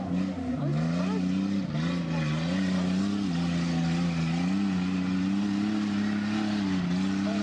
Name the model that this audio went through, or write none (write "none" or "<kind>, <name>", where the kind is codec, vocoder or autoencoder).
none